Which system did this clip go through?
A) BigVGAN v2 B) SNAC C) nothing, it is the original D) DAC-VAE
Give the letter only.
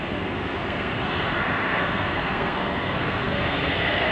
B